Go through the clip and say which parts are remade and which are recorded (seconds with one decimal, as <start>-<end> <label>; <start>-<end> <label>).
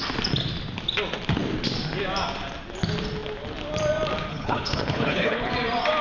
0.0-4.3 recorded; 4.3-5.5 remade; 5.5-6.0 recorded